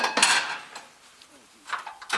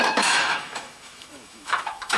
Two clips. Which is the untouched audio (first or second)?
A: first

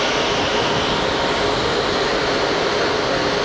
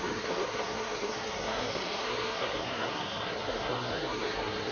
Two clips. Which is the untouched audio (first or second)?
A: first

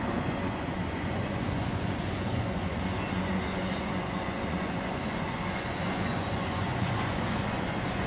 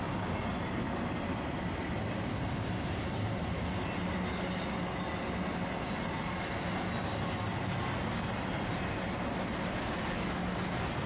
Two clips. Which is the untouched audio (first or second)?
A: second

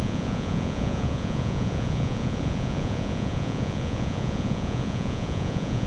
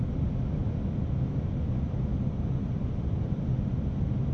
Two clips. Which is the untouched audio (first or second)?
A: second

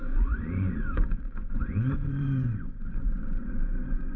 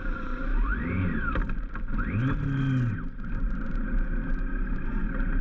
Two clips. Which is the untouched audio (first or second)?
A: second